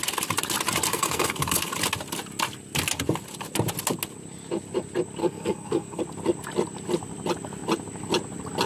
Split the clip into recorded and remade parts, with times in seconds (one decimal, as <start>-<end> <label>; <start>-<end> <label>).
0.0-0.9 recorded; 0.9-1.7 remade; 1.7-5.2 recorded; 5.2-6.0 remade; 6.0-8.7 recorded